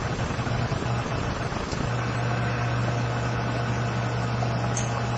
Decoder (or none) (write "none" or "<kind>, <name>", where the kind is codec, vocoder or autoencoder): none